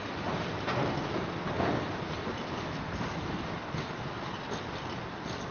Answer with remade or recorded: recorded